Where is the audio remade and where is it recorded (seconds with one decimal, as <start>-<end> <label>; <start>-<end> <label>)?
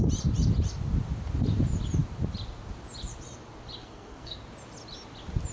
0.0-3.8 recorded; 3.8-4.4 remade; 4.4-5.5 recorded